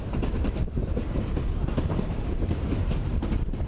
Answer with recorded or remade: recorded